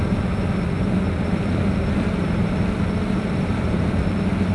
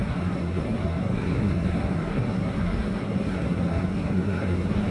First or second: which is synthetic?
second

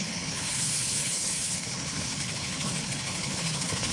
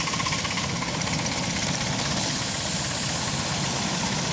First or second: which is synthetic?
first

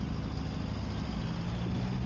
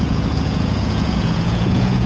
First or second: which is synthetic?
second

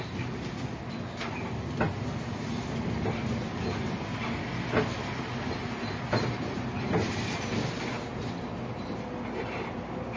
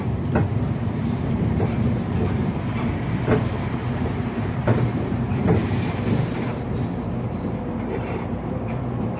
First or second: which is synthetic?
second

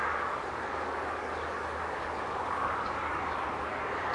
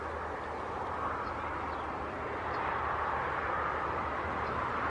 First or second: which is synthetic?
first